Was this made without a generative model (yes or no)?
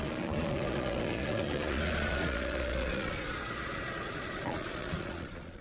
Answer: no